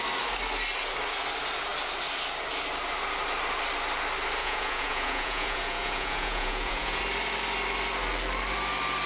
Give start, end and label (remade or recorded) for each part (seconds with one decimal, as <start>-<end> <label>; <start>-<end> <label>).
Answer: 0.0-4.4 recorded; 4.4-7.0 remade; 7.0-9.1 recorded